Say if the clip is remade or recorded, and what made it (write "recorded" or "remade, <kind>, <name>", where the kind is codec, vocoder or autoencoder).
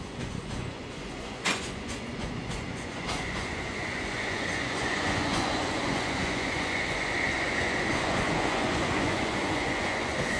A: remade, vocoder, Vocos